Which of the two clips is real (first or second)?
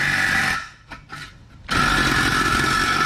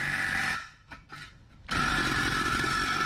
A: first